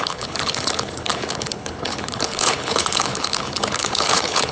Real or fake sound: fake